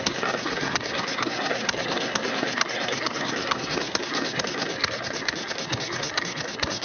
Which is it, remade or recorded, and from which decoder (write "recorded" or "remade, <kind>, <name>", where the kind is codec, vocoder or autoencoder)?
remade, codec, SNAC